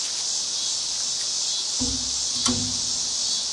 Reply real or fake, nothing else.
real